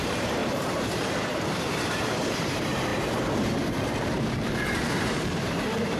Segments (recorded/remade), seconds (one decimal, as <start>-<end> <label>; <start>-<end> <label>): 0.0-6.0 remade